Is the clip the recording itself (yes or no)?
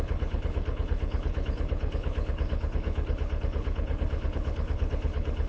no